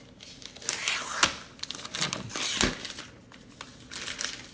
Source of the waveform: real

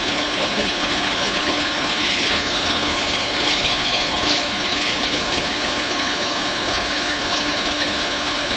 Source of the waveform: fake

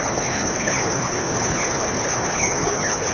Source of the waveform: fake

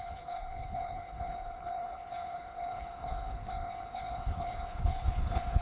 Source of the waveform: fake